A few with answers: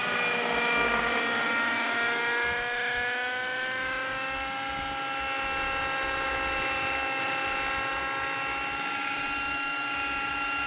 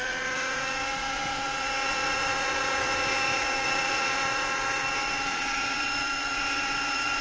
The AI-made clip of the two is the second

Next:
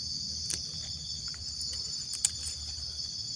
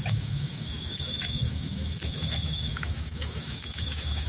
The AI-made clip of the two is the second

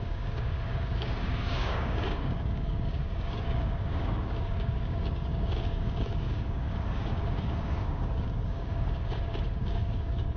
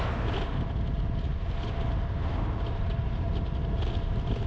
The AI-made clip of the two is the first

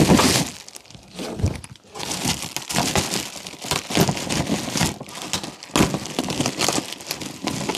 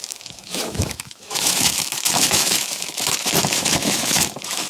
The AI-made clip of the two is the second